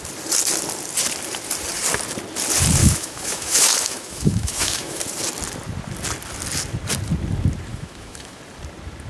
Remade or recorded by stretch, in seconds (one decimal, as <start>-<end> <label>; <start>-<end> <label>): 0.0-2.8 recorded; 2.8-5.0 remade; 5.0-7.7 recorded; 7.7-8.4 remade; 8.4-9.1 recorded